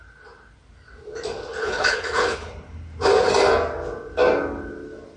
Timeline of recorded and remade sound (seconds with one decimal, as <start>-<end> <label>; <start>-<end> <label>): 0.0-1.6 recorded; 1.6-2.5 remade; 2.5-5.2 recorded